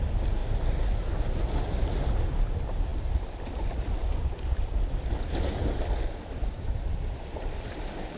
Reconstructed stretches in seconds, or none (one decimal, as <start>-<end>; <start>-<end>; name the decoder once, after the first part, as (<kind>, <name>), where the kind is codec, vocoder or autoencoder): 0.0-0.4 (vocoder, BigVGAN v2); 1.8-8.2